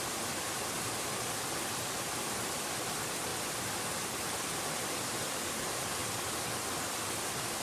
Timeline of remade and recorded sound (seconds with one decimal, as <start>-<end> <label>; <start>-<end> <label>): 0.0-7.6 recorded